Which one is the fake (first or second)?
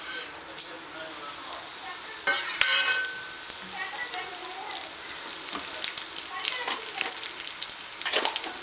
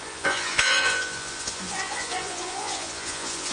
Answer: second